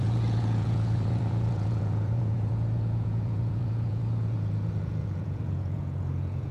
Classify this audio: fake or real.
fake